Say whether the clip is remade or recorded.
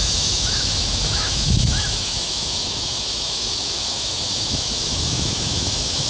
remade